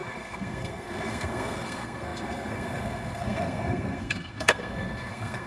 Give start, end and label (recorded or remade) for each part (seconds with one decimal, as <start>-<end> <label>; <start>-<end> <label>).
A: 0.0-5.5 remade